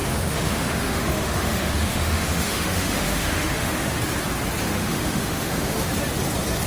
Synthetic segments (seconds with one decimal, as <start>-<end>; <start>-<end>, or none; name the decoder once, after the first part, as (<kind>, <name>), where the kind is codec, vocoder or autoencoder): 0.0-4.0 (autoencoder, DAC-VAE); 4.6-5.9